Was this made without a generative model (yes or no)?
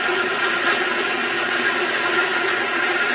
no